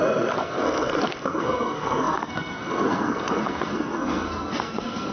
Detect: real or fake fake